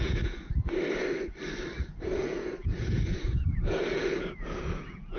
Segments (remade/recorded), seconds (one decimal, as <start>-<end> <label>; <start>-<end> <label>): 0.0-0.5 remade; 0.5-2.1 recorded; 2.1-5.2 remade